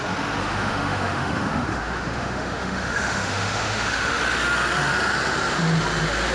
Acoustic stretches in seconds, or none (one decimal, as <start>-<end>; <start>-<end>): 0.0-0.4; 4.2-6.3